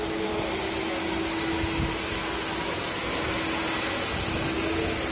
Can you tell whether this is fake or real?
real